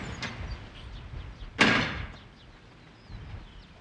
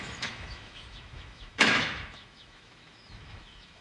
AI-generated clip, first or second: second